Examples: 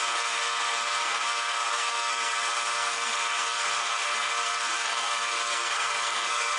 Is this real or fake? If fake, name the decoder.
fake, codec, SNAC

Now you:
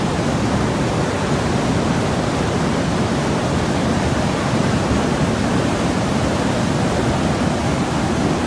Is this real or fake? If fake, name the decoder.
real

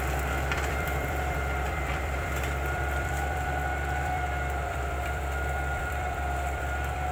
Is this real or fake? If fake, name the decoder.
fake, vocoder, BigVGAN v2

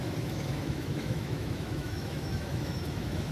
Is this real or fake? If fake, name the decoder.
fake, autoencoder, DAC-VAE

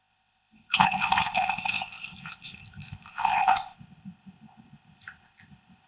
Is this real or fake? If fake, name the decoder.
fake, codec, ZipCodec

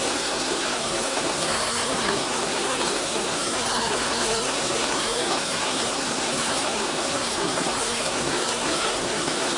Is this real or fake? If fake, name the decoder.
fake, codec, SNAC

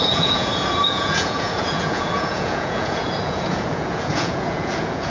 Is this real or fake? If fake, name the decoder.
fake, vocoder, Vocos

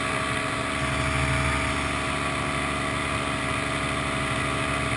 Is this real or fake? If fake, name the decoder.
real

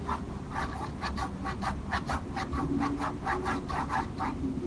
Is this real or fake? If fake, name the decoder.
real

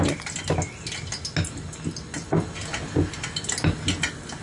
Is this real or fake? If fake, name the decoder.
real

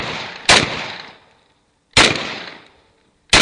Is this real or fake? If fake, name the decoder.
real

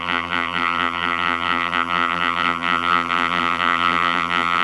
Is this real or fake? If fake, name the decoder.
fake, vocoder, BigVGAN v2